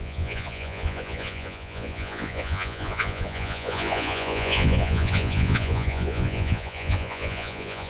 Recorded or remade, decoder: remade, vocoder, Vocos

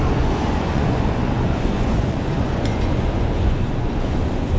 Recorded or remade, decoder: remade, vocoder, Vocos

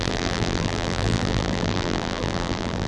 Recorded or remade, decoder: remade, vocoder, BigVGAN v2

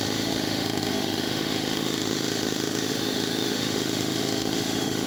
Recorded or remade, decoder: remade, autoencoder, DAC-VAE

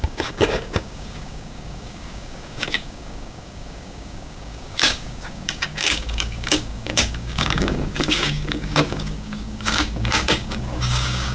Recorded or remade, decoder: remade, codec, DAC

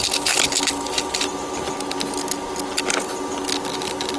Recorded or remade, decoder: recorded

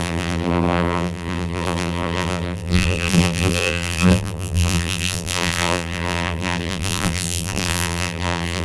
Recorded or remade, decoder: remade, vocoder, BigVGAN v2